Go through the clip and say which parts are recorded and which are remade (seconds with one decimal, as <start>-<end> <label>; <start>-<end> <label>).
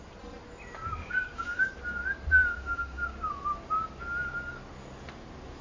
0.0-1.0 recorded; 1.0-1.7 remade; 1.7-2.5 recorded; 2.5-3.3 remade; 3.3-5.6 recorded